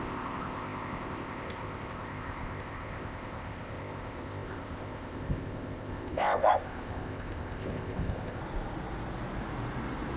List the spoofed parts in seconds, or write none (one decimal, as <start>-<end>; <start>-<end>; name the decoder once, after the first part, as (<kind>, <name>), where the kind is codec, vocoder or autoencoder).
0.0-8.4 (codec, ZipCodec)